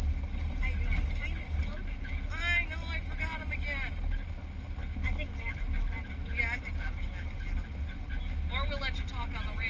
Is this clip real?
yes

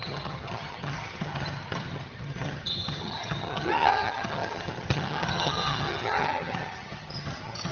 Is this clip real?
no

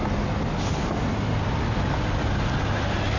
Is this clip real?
yes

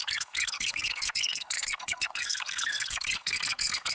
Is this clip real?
no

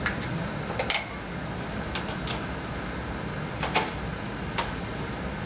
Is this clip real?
yes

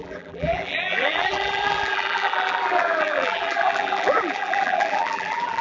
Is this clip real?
no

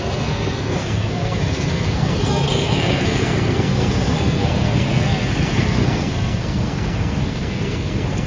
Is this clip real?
no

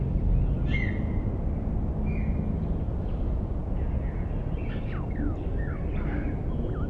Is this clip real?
yes